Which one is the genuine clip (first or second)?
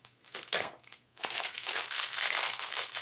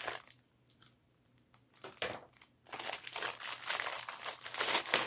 second